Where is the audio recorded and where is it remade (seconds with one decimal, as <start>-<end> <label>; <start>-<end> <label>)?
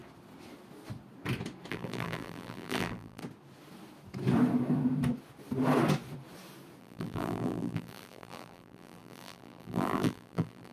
0.0-1.7 recorded; 1.7-3.2 remade; 3.2-6.8 recorded; 6.8-10.7 remade